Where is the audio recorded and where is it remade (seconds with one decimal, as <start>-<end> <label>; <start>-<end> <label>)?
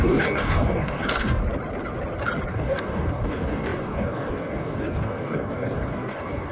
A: 0.0-1.4 remade; 1.4-2.5 recorded; 2.5-6.5 remade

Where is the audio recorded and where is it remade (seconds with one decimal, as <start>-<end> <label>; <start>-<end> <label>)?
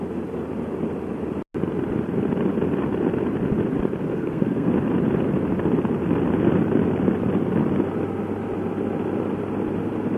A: 0.0-4.1 recorded; 4.1-4.7 remade; 4.7-10.2 recorded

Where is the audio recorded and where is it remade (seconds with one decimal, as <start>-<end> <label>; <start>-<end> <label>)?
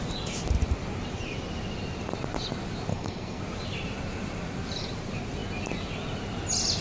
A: 0.0-2.9 recorded; 2.9-3.4 remade; 3.4-6.8 recorded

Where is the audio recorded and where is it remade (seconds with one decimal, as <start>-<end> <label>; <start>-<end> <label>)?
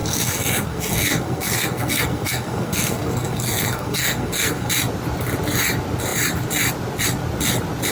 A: 0.0-4.7 remade; 4.7-7.9 recorded